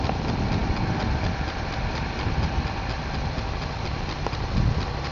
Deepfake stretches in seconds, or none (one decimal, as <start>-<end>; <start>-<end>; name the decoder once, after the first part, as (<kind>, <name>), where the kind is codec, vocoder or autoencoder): none

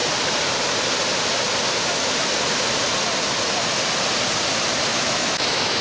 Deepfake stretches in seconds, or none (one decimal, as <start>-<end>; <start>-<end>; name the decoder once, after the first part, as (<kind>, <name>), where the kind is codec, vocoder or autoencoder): 4.9-5.8 (autoencoder, DAC-VAE)